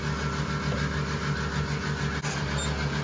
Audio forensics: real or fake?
real